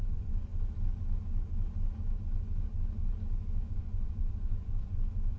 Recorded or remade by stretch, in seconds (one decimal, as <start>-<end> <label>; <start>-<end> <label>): 0.0-0.5 remade; 0.5-3.7 recorded; 3.7-5.4 remade